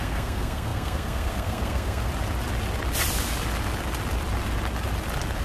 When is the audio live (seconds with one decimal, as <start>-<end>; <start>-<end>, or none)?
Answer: 2.1-5.4